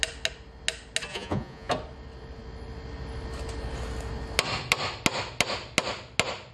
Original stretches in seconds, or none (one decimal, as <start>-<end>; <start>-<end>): 0.0-1.1; 1.7-6.5